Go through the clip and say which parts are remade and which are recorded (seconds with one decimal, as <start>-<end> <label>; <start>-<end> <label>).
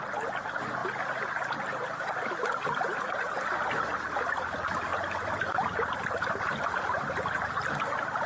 0.0-8.3 recorded